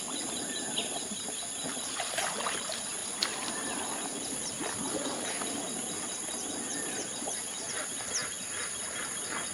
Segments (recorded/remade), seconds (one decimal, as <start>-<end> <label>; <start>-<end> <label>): 0.0-9.5 recorded